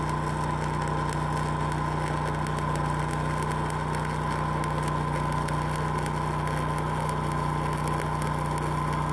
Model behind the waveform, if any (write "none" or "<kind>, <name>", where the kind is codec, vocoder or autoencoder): none